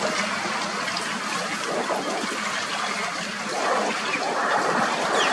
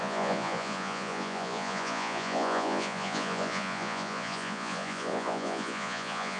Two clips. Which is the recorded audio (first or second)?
first